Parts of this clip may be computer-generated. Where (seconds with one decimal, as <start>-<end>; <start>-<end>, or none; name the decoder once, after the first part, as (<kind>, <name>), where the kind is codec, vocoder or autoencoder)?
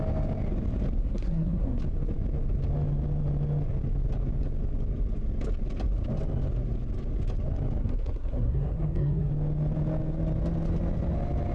1.0-1.8 (codec, SNAC); 7.8-9.3